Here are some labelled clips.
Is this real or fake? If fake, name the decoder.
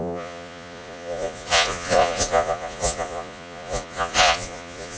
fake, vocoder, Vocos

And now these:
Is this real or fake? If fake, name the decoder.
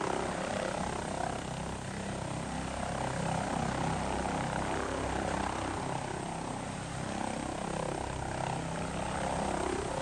real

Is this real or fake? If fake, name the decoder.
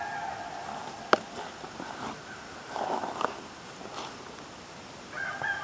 real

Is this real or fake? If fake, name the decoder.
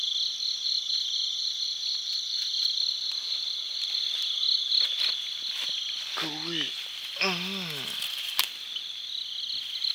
real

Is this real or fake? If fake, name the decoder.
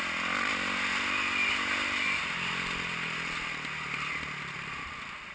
real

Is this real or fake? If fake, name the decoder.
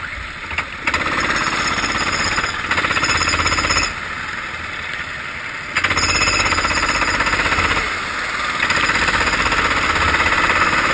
real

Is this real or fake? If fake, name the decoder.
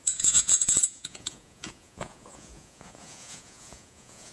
fake, vocoder, Vocos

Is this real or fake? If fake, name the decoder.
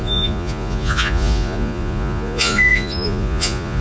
fake, vocoder, Vocos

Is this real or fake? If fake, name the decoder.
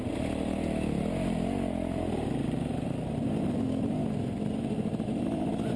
real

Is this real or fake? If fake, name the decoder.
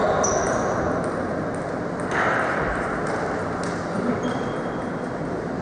real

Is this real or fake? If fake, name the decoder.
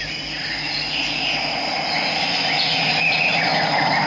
real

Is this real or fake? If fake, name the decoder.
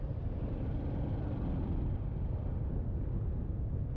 real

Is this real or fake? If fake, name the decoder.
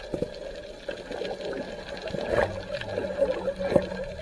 real